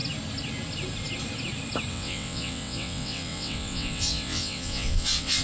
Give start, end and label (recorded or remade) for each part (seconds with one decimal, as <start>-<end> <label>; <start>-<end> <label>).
0.0-1.9 recorded; 1.9-5.4 remade